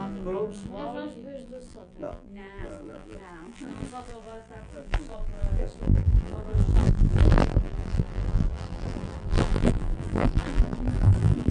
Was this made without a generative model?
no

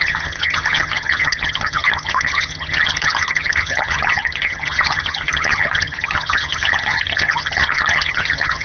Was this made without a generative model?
no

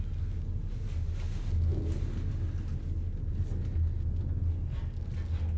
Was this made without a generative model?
yes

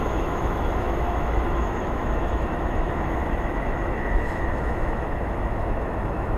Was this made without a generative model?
no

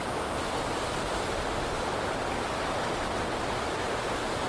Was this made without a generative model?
yes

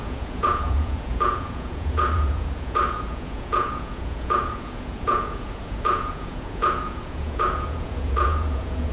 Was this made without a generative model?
no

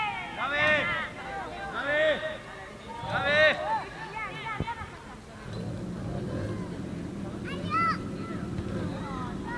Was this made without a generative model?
yes